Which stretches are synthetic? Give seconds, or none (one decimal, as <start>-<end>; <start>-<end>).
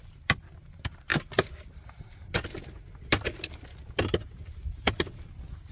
none